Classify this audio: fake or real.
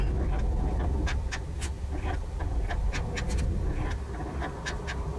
real